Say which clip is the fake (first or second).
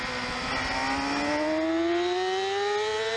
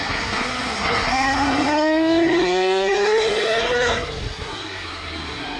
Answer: second